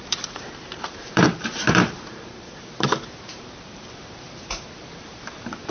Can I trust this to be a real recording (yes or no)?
no